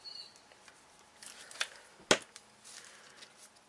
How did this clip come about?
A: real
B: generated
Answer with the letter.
A